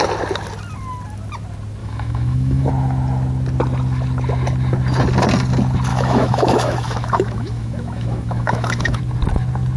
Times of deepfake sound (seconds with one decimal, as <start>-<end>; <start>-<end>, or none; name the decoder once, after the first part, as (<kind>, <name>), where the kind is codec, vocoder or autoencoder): 1.8-2.7 (autoencoder, DAC-VAE); 5.9-9.0

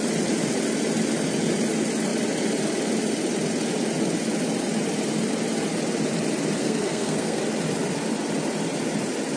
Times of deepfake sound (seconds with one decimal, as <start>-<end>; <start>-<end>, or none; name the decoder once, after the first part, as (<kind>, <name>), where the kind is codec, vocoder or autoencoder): 6.6-7.4 (codec, SNAC)

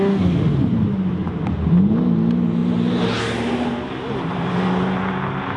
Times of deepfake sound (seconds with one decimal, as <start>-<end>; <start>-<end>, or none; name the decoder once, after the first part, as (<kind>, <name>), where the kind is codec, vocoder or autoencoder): none

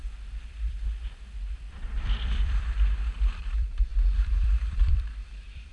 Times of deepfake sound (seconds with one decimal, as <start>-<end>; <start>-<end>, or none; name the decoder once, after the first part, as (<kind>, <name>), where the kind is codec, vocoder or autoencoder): 0.0-5.7 (vocoder, BigVGAN v2)

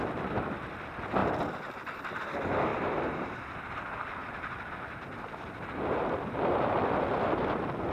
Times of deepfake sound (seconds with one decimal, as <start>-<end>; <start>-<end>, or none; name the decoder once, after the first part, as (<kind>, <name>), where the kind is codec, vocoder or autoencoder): 2.7-3.4 (vocoder, BigVGAN v2)

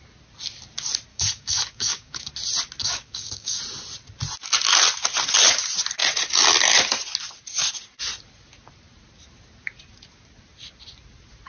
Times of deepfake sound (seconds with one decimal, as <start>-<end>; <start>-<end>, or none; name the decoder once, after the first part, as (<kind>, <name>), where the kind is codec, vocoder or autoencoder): 1.1-2.3 (codec, DAC); 2.8-3.6

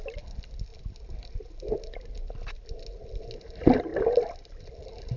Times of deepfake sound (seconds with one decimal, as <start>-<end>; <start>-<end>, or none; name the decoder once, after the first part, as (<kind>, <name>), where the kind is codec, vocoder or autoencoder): 3.9-4.6 (vocoder, BigVGAN v2)